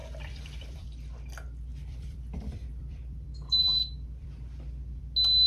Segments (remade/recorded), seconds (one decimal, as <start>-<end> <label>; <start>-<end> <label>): 0.0-1.0 remade; 1.0-1.7 recorded; 1.7-5.0 remade; 5.0-5.5 recorded